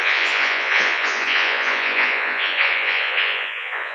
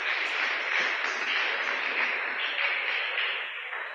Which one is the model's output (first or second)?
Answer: first